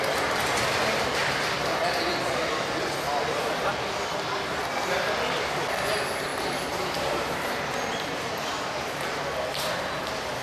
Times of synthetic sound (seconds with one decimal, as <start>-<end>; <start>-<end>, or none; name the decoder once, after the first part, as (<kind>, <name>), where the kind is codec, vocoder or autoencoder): 1.2-1.8 (vocoder, BigVGAN v2); 6.3-8.3